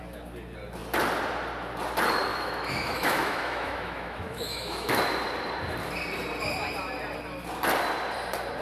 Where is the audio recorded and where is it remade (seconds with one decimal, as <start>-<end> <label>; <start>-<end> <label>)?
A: 0.0-2.3 recorded; 2.3-5.0 remade; 5.0-8.6 recorded